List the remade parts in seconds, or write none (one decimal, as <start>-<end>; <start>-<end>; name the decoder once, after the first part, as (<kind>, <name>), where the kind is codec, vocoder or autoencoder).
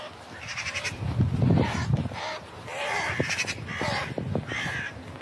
0.5-2.6 (vocoder, BigVGAN v2)